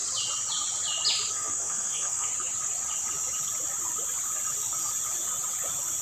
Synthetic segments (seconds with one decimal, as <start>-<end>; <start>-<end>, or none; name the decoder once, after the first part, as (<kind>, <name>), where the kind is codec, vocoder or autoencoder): 1.3-2.3 (codec, SNAC)